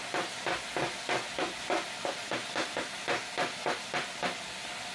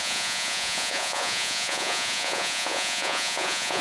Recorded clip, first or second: first